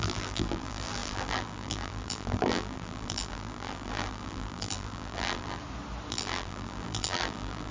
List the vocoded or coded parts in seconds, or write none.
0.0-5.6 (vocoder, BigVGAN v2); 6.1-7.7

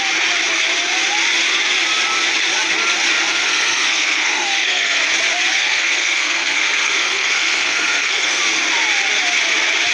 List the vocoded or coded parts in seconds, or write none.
3.3-5.0 (codec, SNAC); 5.5-8.4

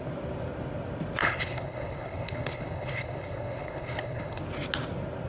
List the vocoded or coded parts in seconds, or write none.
1.2-4.4 (codec, HILCodec)

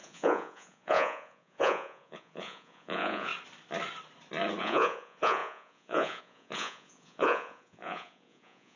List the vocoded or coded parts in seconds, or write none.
0.0-3.3 (vocoder, Vocos); 4.6-8.8

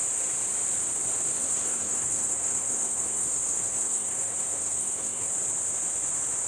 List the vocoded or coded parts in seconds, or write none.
1.4-5.3 (codec, SNAC)

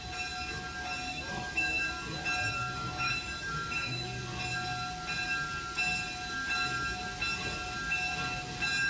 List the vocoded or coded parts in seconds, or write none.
1.1-1.9 (autoencoder, DAC-VAE); 2.7-4.2